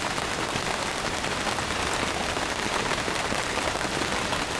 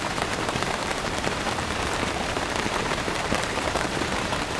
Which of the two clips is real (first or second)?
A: first